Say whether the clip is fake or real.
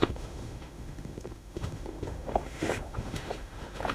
fake